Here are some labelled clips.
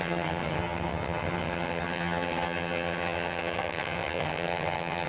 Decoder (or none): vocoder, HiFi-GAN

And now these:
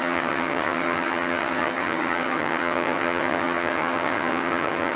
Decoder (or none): vocoder, HiFi-GAN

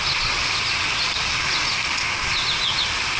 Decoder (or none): none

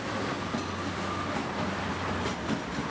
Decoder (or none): none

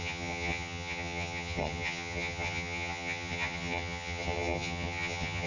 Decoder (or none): vocoder, HiFi-GAN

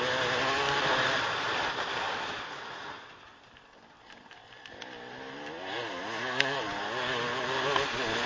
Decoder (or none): none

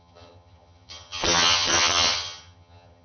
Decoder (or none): vocoder, HiFi-GAN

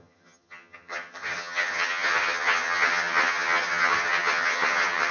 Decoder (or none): vocoder, HiFi-GAN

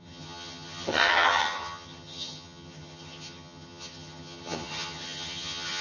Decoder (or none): vocoder, HiFi-GAN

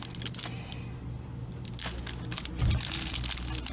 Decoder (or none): none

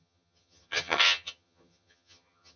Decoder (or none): vocoder, HiFi-GAN